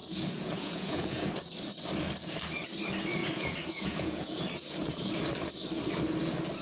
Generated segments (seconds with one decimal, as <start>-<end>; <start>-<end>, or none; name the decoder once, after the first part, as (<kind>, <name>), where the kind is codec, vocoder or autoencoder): 0.0-1.3 (vocoder, Vocos); 3.2-4.4